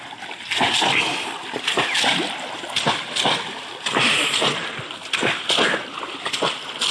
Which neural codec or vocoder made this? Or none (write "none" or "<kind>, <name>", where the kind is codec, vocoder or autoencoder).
none